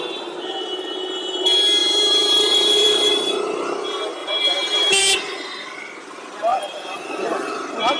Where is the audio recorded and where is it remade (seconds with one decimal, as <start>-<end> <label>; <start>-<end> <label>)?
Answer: 0.0-1.8 recorded; 1.8-3.5 remade; 3.5-4.2 recorded; 4.2-5.0 remade; 5.0-8.0 recorded